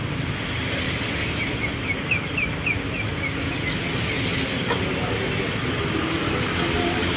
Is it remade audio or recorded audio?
recorded